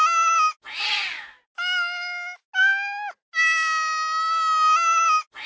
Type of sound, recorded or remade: recorded